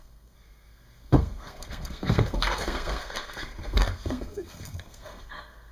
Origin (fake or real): fake